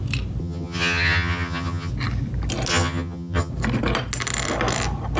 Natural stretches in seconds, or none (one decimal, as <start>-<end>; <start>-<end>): 0.0-0.4; 1.9-2.7; 3.5-5.2